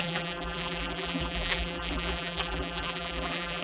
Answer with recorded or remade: remade